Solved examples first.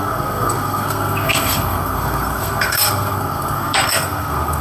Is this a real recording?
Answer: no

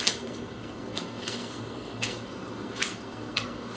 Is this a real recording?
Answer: no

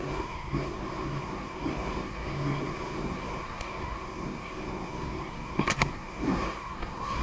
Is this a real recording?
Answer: no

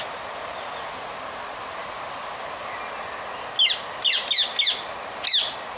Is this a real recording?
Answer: yes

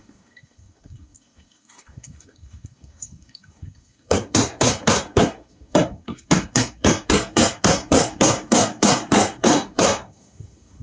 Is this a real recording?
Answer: no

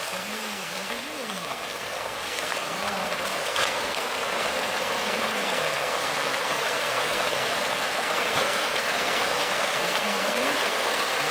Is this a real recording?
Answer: no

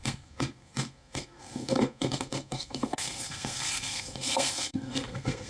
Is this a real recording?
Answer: no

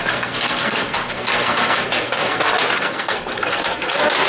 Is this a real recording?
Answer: no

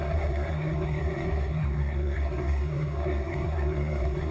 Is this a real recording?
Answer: no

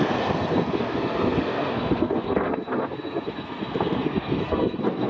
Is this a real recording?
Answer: no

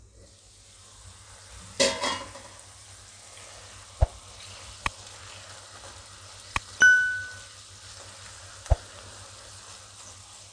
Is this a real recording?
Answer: yes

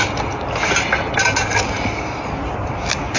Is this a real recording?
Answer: yes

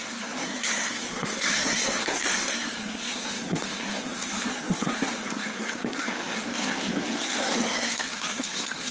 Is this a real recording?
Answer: no